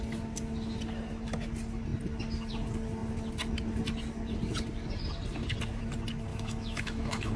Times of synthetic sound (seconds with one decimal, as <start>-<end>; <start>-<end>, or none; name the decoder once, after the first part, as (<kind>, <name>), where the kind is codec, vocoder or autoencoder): 6.3-7.4 (autoencoder, DAC-VAE)